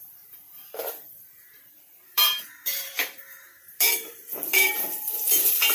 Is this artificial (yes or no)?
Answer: yes